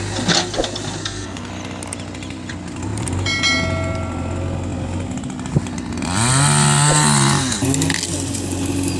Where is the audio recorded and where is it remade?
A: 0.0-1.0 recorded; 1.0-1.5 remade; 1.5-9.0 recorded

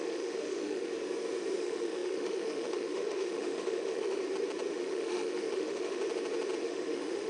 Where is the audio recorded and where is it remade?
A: 0.0-0.9 remade; 0.9-1.6 recorded; 1.6-4.2 remade; 4.2-4.7 recorded; 4.7-6.0 remade; 6.0-6.6 recorded; 6.6-7.3 remade